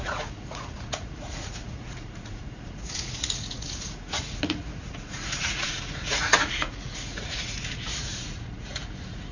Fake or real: fake